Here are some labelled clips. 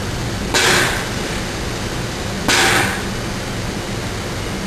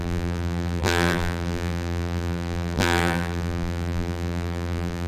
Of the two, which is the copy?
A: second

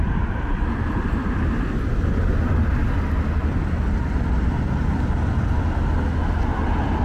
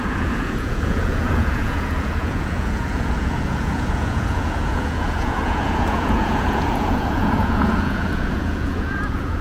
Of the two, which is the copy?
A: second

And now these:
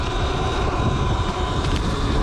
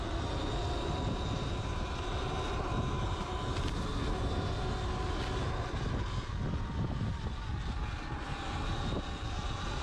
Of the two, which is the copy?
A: first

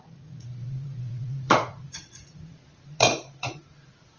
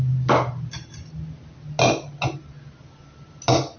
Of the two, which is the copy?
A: first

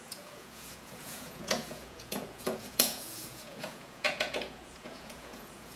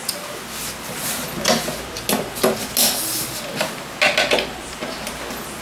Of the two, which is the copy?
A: first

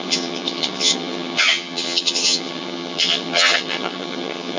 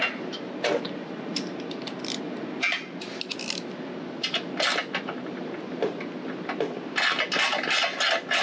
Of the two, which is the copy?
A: first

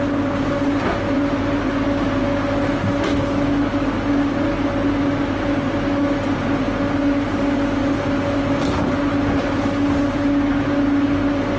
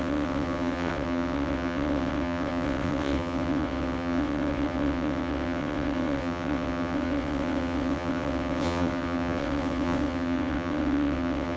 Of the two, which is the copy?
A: second